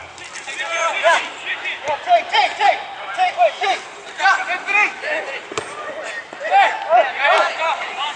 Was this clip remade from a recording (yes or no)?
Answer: yes